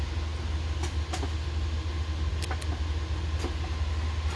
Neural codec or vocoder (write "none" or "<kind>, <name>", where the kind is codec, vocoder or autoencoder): none